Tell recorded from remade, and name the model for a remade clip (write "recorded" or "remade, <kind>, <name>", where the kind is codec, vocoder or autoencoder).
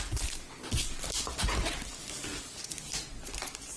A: recorded